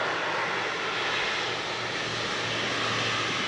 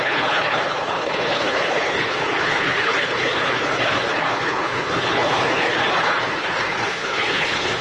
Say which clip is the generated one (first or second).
second